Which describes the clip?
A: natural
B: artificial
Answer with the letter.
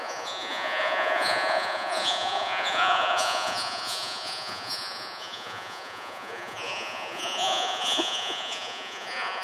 B